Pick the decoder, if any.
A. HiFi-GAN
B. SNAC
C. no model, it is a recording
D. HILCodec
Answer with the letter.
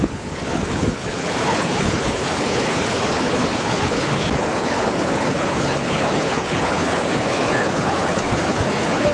D